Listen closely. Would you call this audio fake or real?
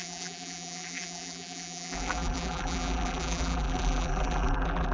fake